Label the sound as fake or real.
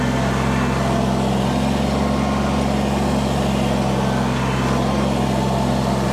real